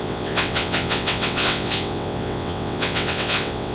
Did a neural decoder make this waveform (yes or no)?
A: yes